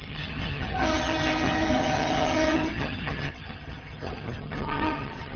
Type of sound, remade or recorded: remade